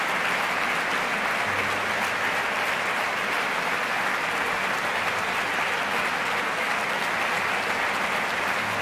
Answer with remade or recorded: recorded